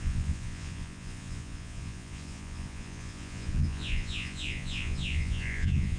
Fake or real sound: fake